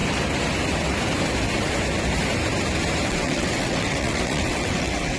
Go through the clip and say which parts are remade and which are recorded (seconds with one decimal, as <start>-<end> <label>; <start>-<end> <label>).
0.0-3.1 recorded; 3.1-5.2 remade

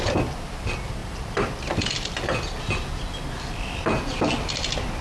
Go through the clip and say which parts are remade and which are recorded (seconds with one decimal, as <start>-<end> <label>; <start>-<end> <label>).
0.0-5.0 recorded